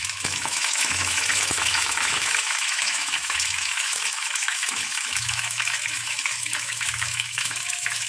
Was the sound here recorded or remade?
remade